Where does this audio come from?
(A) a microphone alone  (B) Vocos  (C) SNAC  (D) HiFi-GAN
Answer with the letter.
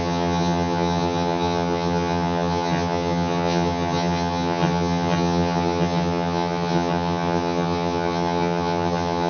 D